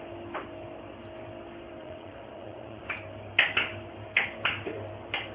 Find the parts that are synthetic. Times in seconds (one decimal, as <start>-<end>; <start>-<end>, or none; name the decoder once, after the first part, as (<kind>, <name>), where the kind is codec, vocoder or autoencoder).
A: 1.8-2.8 (vocoder, Vocos)